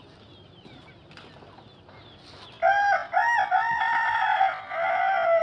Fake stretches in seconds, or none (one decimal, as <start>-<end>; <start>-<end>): none